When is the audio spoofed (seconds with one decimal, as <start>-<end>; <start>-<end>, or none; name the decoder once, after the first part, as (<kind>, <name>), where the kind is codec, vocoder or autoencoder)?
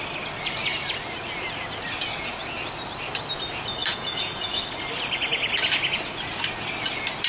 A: 3.8-4.6 (vocoder, Vocos)